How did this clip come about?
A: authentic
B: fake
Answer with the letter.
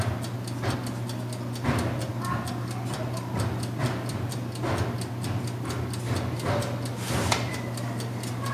A